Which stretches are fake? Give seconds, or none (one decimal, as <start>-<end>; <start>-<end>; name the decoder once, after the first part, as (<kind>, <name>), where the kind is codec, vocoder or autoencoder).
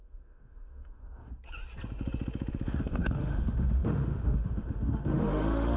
0.0-1.3 (autoencoder, DAC-VAE); 2.8-5.8